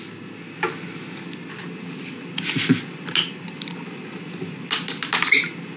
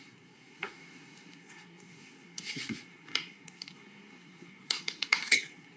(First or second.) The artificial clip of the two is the second